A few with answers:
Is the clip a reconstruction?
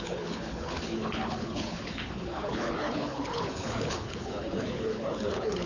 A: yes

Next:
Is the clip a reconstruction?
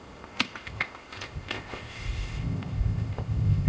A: yes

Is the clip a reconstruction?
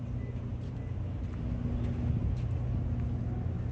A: no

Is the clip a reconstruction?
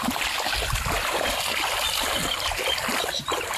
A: no